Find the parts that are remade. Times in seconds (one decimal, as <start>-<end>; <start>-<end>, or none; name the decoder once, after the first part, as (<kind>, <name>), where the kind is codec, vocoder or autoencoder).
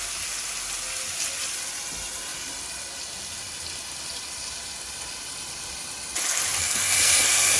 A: 6.6-7.6 (codec, SNAC)